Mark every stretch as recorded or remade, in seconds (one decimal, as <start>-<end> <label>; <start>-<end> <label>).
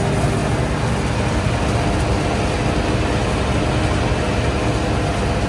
0.0-5.5 recorded